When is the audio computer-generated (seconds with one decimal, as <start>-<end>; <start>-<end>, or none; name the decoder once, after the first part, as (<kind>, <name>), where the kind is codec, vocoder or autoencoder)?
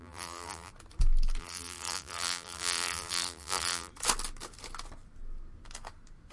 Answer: 0.0-0.7 (vocoder, BigVGAN v2); 1.4-3.9